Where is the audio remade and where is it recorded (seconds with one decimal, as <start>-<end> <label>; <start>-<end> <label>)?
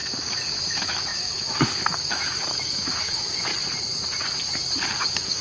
0.0-0.5 recorded; 0.5-3.5 remade; 3.5-5.0 recorded; 5.0-5.4 remade